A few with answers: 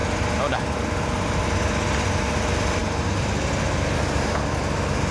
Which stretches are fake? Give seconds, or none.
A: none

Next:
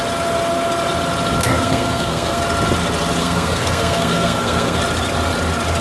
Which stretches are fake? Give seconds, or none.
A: 1.4-2.4; 3.2-4.8

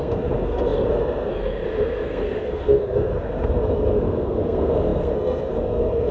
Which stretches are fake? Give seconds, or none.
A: 0.0-6.1